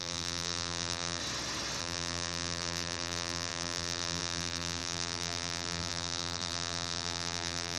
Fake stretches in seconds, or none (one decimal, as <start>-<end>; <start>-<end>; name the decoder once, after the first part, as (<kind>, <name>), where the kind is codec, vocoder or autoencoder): 0.0-1.2 (vocoder, BigVGAN v2); 1.8-7.8